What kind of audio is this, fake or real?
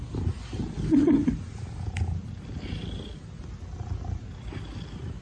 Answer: real